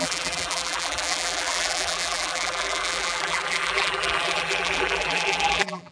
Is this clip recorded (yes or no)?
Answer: no